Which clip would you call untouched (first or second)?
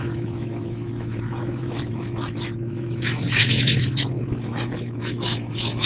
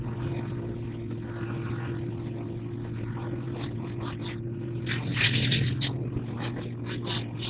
second